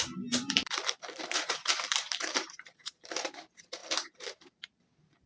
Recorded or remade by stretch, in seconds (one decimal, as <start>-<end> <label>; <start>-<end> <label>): 0.0-3.8 remade; 3.8-5.3 recorded